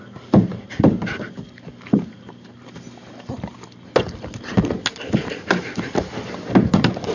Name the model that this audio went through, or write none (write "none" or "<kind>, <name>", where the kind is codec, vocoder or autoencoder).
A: none